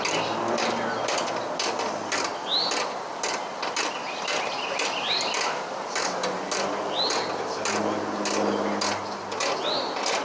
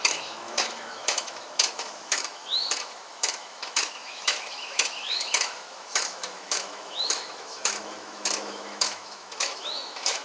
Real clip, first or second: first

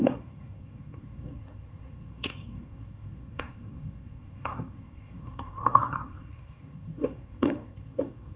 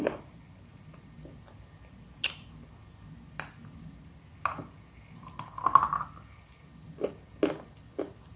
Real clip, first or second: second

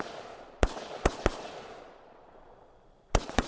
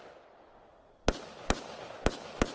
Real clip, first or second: second